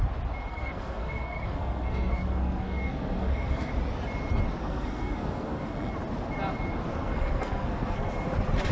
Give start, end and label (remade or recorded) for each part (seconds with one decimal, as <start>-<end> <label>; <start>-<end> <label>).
0.0-0.5 recorded; 0.5-3.7 remade; 3.7-4.6 recorded; 4.6-5.9 remade; 5.9-6.9 recorded; 6.9-8.1 remade; 8.1-8.7 recorded